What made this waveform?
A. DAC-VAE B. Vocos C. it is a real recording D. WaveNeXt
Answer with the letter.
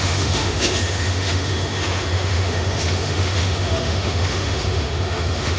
A